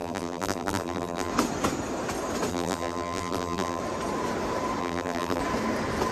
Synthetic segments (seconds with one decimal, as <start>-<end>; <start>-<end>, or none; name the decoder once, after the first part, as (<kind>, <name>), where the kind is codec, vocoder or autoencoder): 0.0-1.3 (vocoder, BigVGAN v2); 2.5-3.8; 4.8-5.4